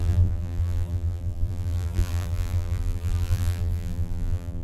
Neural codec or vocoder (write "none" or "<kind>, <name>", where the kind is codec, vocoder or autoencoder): vocoder, BigVGAN v2